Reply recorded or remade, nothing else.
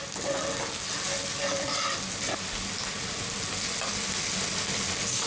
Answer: recorded